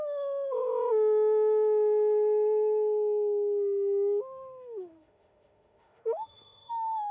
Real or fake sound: fake